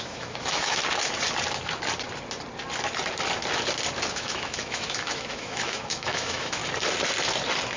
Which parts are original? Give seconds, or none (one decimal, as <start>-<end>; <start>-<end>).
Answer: 0.8-4.1; 6.6-7.8